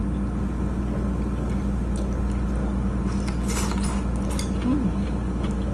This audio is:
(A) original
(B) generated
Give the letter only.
A